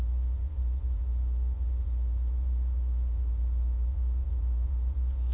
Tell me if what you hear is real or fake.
fake